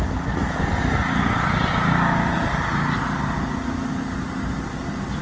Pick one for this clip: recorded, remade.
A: recorded